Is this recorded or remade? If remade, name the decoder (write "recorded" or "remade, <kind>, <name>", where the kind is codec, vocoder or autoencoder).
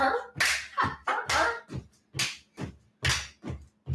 recorded